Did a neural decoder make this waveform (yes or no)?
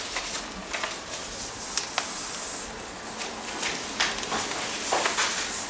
no